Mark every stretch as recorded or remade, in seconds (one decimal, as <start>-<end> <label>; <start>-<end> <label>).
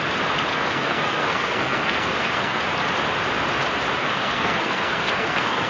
0.0-0.5 recorded; 0.5-2.6 remade; 2.6-4.0 recorded; 4.0-5.7 remade